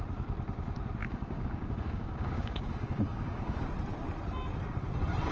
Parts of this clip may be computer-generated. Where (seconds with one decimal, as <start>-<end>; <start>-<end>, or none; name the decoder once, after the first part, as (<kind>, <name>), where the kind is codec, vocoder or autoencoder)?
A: 1.0-3.6 (codec, DAC)